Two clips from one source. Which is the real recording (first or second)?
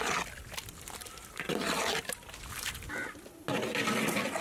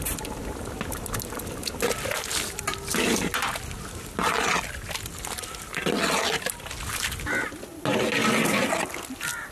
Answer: second